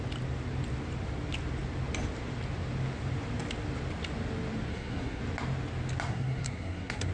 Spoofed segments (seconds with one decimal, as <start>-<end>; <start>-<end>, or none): 4.7-5.2; 6.1-7.1